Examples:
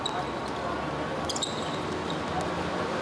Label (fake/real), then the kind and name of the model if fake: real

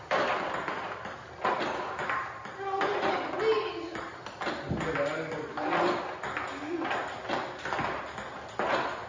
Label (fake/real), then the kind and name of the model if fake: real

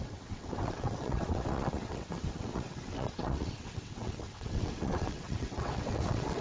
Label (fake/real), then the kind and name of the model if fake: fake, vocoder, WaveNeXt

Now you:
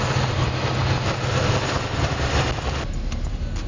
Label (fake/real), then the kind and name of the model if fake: real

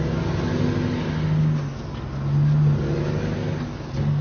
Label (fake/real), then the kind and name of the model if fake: real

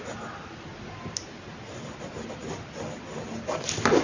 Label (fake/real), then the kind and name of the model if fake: real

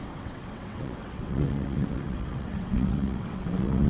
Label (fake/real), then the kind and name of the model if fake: fake, vocoder, WaveNeXt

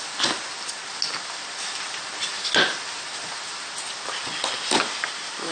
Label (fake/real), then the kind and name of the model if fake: real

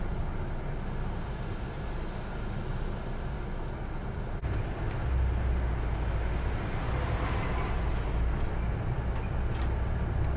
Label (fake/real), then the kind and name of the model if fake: real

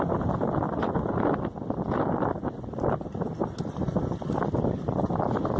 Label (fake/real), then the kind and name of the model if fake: real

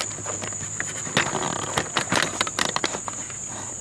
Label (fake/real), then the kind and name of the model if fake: real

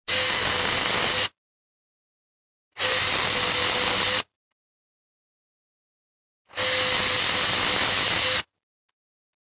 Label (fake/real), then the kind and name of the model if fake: real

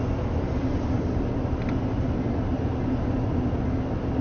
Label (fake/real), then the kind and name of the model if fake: real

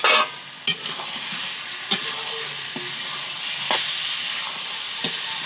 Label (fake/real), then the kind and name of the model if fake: real